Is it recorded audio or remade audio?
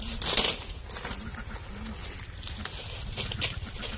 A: recorded